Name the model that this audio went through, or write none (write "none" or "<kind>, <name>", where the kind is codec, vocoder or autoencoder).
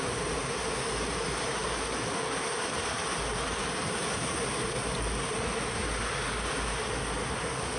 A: none